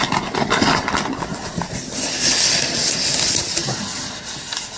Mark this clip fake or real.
real